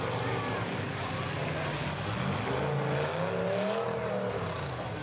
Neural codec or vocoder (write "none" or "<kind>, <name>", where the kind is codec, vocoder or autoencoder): none